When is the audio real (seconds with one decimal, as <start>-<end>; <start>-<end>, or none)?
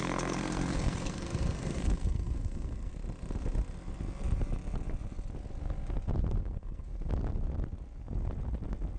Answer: 3.0-6.4; 6.9-9.0